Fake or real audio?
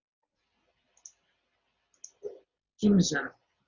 real